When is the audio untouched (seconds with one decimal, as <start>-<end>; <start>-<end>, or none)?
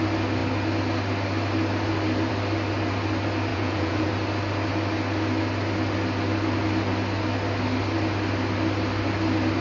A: 0.0-3.5; 4.1-9.6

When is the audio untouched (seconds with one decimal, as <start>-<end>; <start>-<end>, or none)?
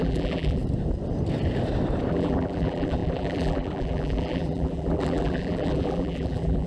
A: 0.6-2.1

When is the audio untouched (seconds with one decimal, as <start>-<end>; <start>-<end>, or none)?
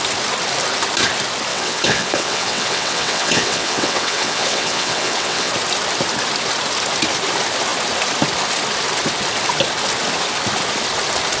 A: 0.0-1.5; 5.5-11.4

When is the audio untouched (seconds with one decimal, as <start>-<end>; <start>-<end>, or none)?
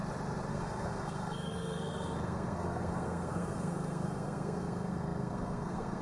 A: 0.0-0.5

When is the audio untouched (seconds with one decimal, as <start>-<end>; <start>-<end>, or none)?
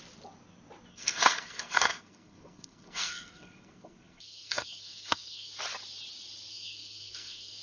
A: 0.0-0.9; 5.5-6.5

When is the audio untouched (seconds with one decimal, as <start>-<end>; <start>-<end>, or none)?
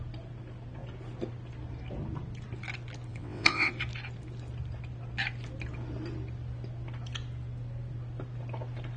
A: 0.0-3.1; 3.7-9.0